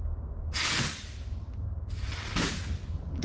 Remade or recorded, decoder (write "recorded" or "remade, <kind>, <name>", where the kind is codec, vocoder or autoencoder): recorded